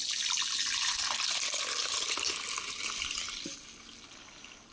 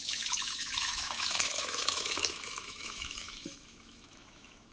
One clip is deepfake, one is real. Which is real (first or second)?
first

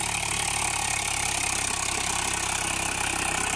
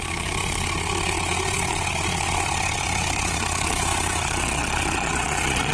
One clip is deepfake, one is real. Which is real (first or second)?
first